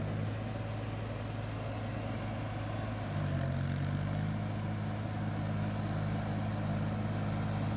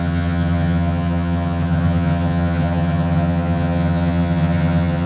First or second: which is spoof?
second